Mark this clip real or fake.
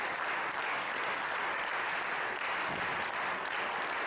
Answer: real